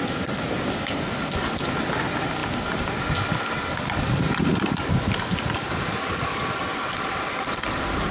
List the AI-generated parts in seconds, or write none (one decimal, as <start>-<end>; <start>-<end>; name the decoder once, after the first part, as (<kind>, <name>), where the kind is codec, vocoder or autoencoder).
none